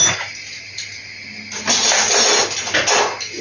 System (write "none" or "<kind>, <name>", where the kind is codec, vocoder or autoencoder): none